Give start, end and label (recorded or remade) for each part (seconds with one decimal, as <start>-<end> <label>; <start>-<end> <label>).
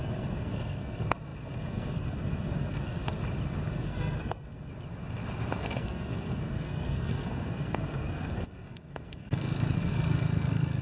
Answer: 0.0-3.2 remade; 3.2-3.7 recorded; 3.7-4.7 remade; 4.7-5.6 recorded; 5.6-10.8 remade